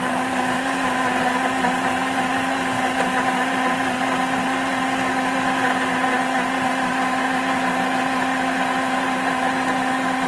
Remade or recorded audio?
recorded